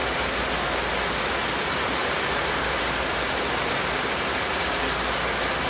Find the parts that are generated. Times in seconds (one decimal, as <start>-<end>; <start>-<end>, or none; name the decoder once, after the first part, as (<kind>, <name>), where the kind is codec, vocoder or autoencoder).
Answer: 1.4-4.8 (vocoder, BigVGAN v2)